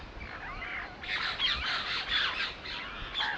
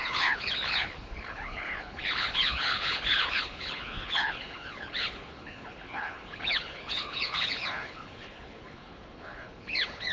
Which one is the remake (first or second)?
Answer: second